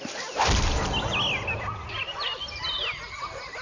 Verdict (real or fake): real